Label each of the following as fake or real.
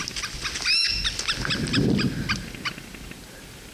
real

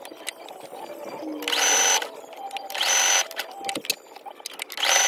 real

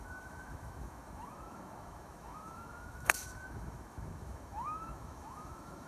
fake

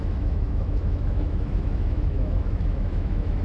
fake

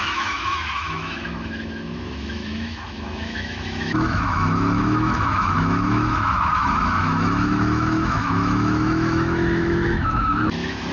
fake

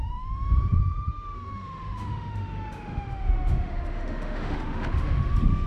fake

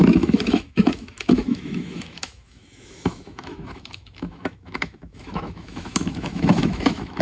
fake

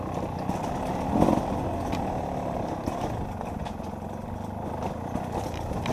real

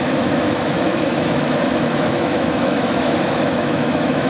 fake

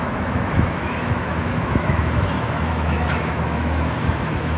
fake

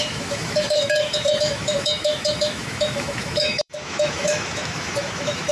fake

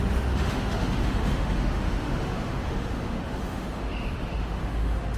fake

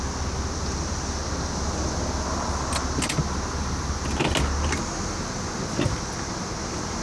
real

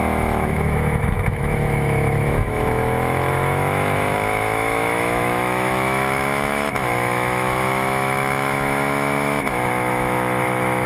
fake